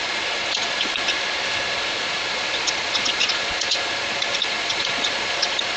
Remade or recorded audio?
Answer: remade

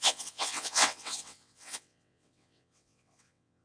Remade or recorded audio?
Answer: remade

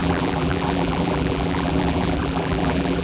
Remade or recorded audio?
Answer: remade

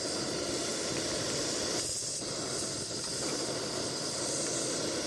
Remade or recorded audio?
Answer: remade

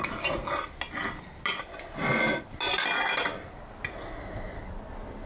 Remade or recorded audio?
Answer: recorded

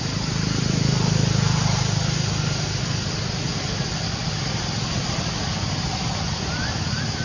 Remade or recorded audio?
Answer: recorded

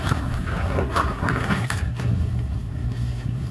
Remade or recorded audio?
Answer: remade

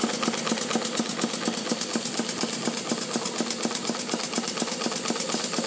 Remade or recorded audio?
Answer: recorded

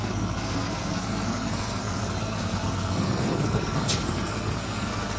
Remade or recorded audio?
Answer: remade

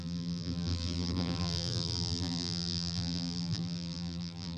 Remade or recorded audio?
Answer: remade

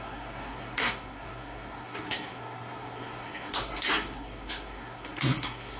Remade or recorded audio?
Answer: remade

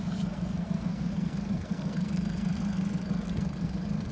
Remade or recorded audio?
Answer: remade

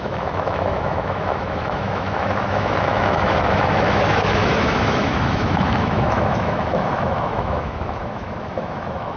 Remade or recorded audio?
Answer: remade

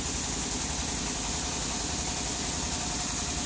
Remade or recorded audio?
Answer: recorded